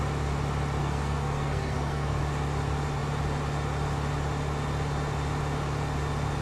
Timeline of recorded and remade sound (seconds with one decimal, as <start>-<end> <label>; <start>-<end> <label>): 0.0-0.8 recorded; 0.8-2.2 remade; 2.2-6.4 recorded